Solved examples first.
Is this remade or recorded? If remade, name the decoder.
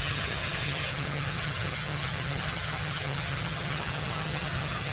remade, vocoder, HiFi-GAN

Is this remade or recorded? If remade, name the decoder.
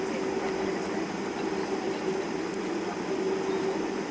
recorded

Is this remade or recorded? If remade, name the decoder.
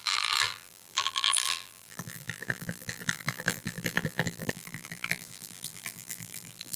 remade, vocoder, BigVGAN v2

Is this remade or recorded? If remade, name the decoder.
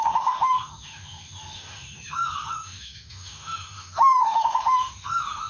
remade, autoencoder, DAC-VAE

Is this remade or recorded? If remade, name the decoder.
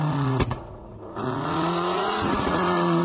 remade, vocoder, Vocos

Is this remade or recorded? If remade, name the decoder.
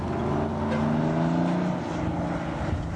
recorded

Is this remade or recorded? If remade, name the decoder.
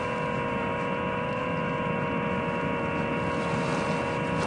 recorded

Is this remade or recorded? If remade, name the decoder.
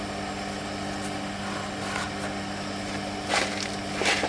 recorded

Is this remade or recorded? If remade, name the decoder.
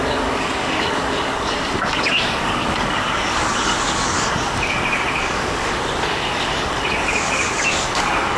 remade, codec, DAC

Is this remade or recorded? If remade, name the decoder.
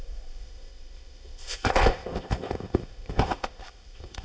remade, codec, ZipCodec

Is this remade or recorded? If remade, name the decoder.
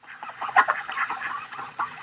remade, vocoder, Vocos